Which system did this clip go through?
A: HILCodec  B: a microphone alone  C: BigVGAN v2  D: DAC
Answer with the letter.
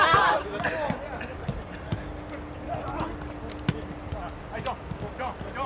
B